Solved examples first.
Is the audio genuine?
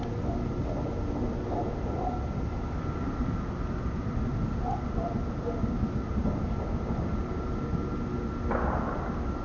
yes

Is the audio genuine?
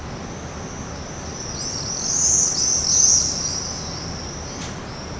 yes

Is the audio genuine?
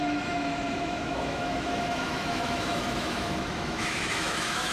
no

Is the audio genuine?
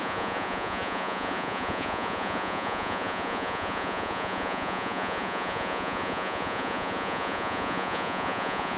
no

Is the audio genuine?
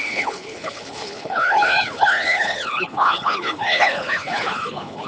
no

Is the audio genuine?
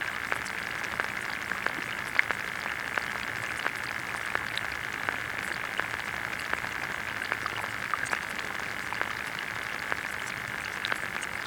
yes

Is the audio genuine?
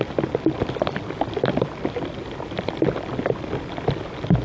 yes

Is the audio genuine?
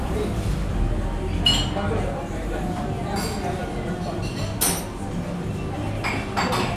yes